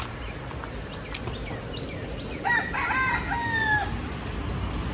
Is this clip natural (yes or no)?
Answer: yes